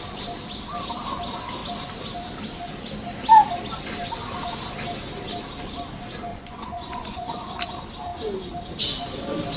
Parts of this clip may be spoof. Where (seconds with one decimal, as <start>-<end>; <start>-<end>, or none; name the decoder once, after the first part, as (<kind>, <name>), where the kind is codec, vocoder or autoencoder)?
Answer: 6.3-7.5 (vocoder, Vocos)